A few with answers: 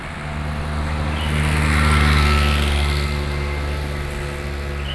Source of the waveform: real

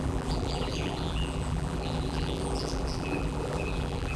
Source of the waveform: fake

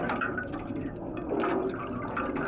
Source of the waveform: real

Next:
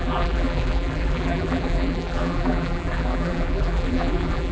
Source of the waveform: fake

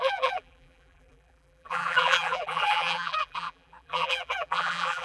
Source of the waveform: fake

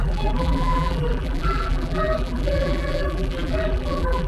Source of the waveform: fake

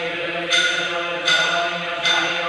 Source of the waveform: fake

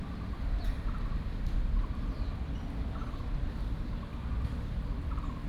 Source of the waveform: fake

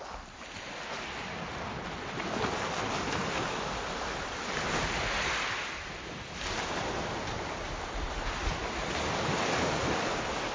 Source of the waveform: real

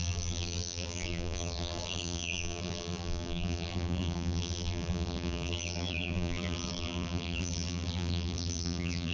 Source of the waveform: fake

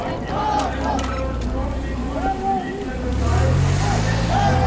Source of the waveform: real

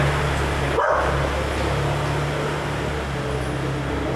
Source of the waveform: real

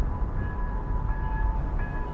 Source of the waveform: real